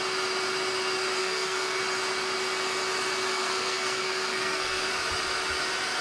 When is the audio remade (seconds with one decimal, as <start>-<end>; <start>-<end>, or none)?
1.2-1.8; 3.3-4.9